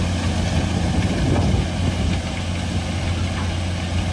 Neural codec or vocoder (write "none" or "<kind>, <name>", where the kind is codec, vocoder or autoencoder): none